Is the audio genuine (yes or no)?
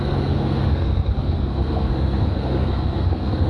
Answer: no